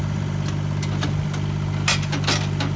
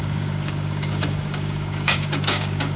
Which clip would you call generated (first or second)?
second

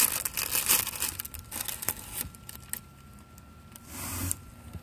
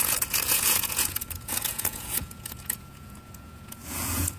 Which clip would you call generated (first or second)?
second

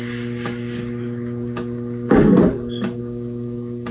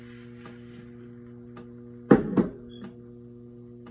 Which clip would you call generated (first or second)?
first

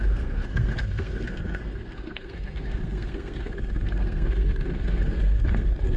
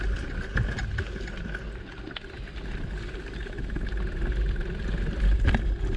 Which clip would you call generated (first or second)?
first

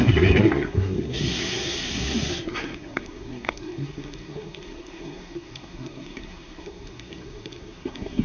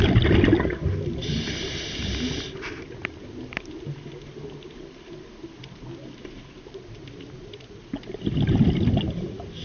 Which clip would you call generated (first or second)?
first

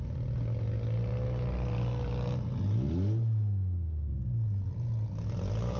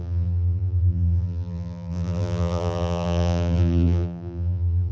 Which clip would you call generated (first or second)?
second